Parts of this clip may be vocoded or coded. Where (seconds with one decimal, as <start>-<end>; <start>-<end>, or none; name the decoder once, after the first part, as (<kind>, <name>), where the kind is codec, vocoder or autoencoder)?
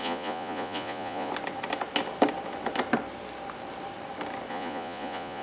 0.0-1.3 (vocoder, Vocos); 4.5-5.4